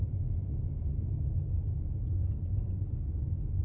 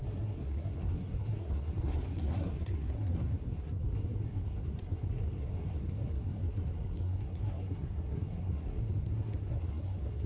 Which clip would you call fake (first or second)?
second